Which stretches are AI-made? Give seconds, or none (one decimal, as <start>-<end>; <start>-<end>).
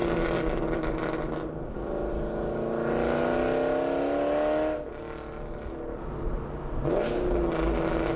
none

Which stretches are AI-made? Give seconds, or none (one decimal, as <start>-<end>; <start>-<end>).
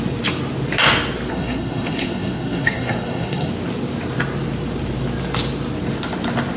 1.3-3.5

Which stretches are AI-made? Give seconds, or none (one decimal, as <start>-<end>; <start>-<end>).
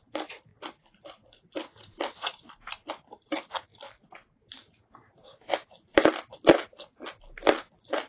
0.5-2.3